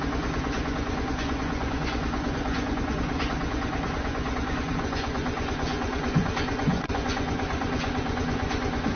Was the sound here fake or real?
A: fake